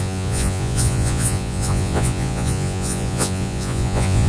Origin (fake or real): fake